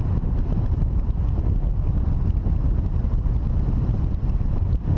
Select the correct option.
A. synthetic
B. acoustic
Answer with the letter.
B